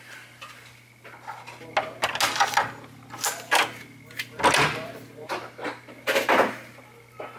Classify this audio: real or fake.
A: real